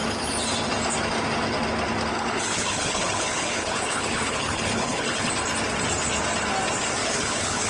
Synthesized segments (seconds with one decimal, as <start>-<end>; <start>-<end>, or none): 2.1-5.3; 7.0-7.7